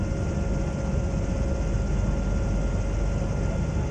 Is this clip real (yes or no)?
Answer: yes